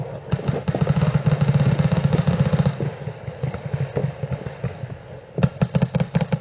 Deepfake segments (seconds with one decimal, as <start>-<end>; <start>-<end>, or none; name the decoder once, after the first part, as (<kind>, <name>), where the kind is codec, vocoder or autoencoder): none